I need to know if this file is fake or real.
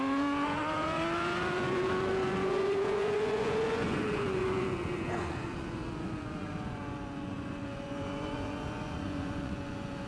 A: fake